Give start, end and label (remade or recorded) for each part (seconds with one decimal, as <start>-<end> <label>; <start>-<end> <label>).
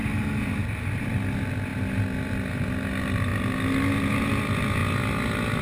0.0-5.6 recorded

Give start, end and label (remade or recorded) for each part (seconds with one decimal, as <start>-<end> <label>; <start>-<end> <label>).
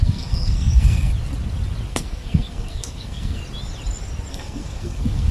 0.0-1.1 remade; 1.1-1.9 recorded; 1.9-3.4 remade; 3.4-4.3 recorded; 4.3-5.3 remade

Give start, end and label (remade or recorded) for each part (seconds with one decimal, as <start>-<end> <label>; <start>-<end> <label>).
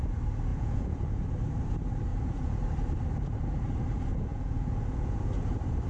0.0-0.5 recorded; 0.5-1.2 remade; 1.2-2.1 recorded; 2.1-2.6 remade; 2.6-4.3 recorded; 4.3-5.3 remade; 5.3-5.9 recorded